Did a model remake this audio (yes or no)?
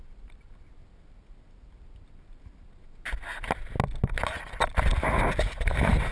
no